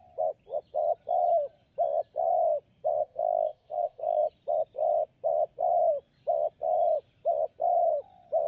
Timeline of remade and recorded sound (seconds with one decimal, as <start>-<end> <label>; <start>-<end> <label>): 0.0-3.0 recorded; 3.0-4.2 remade; 4.2-8.5 recorded